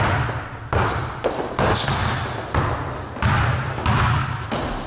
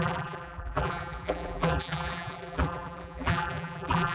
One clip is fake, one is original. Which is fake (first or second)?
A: second